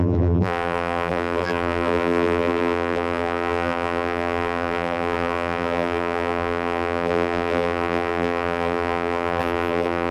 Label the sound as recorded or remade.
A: remade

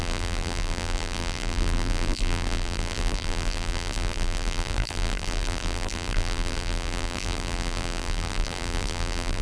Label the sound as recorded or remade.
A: remade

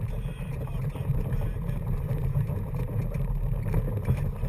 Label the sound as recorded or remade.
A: remade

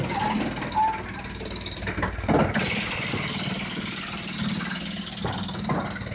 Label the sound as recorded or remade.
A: recorded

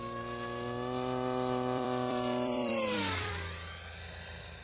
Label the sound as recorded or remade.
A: remade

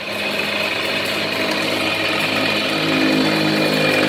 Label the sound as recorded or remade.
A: recorded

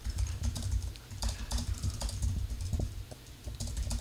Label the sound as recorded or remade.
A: remade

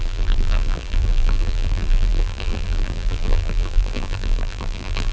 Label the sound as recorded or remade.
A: remade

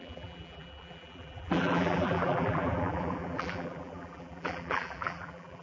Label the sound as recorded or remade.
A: remade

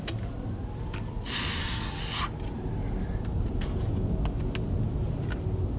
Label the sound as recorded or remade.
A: recorded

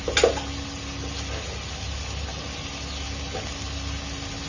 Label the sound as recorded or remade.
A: recorded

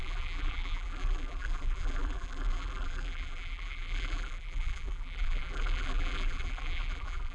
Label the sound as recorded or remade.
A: remade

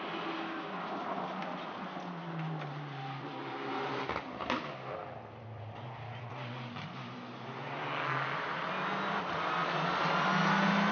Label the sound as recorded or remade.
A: recorded